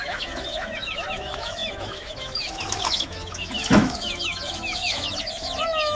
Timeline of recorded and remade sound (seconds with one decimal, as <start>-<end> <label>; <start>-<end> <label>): 0.0-6.0 remade